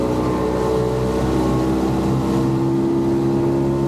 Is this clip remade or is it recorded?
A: recorded